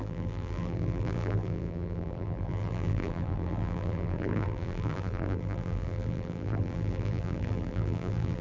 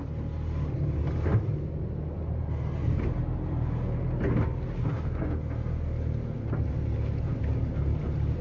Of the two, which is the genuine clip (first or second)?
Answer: second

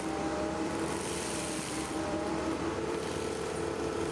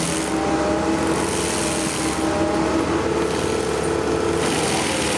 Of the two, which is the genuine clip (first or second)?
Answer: second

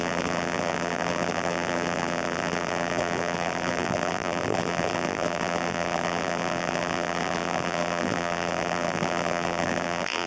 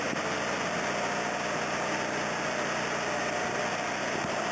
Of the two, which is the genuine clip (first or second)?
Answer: second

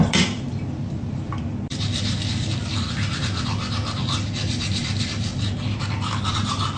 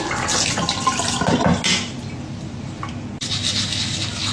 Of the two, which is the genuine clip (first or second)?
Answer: second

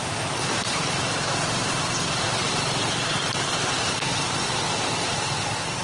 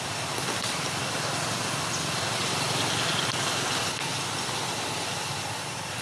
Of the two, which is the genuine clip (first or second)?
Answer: second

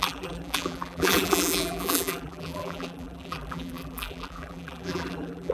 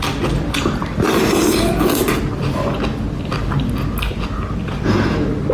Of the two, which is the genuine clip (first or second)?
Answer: second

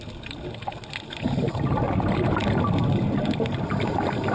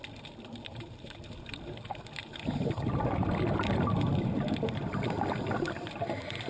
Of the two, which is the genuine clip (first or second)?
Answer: first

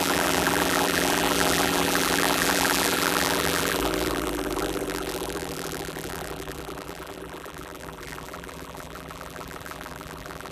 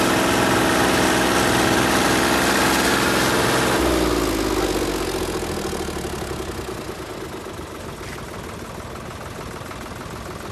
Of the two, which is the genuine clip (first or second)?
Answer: second